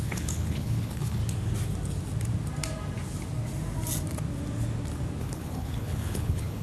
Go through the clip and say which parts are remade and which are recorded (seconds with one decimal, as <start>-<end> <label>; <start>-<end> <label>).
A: 0.0-1.2 remade; 1.2-5.2 recorded; 5.2-6.6 remade